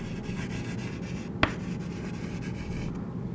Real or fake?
real